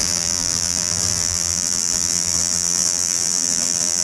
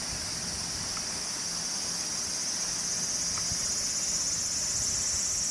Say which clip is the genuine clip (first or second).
second